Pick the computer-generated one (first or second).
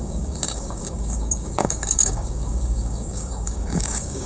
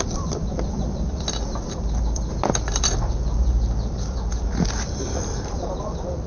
first